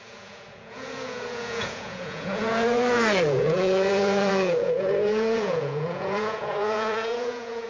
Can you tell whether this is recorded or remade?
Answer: remade